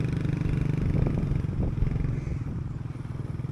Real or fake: real